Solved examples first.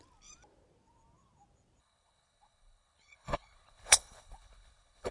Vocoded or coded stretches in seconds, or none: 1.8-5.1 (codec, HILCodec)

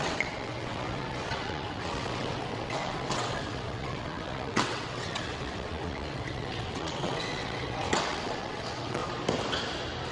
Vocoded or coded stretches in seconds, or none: 0.0-9.0 (vocoder, WaveNeXt)

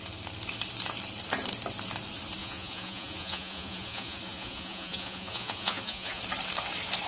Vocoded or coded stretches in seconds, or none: 2.4-6.2 (vocoder, Vocos)

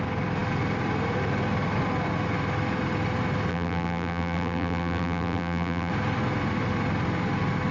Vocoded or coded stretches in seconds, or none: 3.5-5.9 (vocoder, BigVGAN v2)